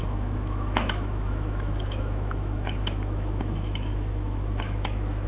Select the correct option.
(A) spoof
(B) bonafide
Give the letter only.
A